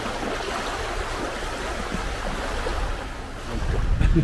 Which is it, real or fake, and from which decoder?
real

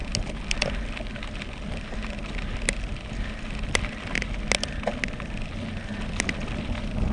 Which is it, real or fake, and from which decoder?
real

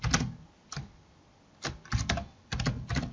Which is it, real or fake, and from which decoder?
real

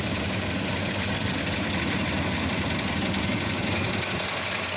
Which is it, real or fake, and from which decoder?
real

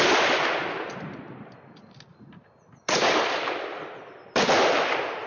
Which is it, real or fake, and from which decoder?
real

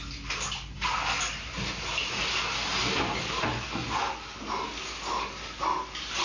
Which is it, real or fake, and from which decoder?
real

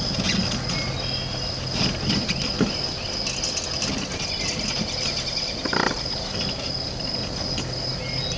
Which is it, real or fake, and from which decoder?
real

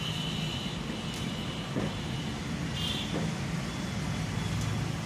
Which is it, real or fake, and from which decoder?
real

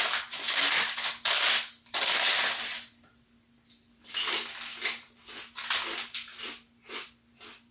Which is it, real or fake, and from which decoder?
real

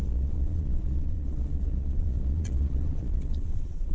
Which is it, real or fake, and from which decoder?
fake, vocoder, Vocos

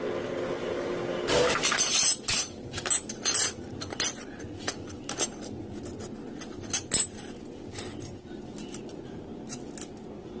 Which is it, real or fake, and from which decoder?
real